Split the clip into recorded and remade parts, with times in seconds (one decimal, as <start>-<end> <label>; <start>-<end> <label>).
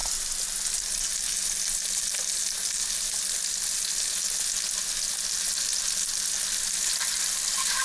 0.0-7.8 recorded